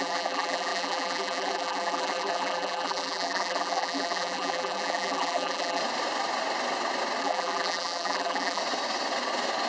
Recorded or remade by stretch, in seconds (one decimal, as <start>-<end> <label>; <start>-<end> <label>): 0.0-5.8 remade; 5.8-7.2 recorded; 7.2-8.6 remade; 8.6-9.7 recorded